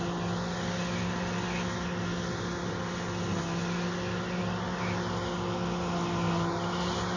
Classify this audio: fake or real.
real